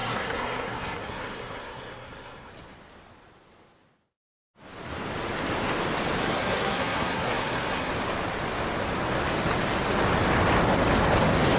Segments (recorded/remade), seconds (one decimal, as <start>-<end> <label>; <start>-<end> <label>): 0.0-2.5 remade; 2.5-6.2 recorded; 6.2-7.9 remade; 7.9-11.6 recorded